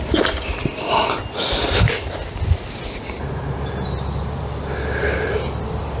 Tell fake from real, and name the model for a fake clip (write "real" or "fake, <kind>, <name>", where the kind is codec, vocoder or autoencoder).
real